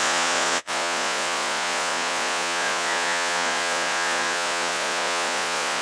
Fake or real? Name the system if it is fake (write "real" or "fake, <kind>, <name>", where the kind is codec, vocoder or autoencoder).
fake, vocoder, Vocos